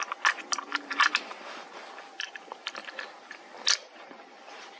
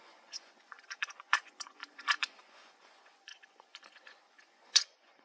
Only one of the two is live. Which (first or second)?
first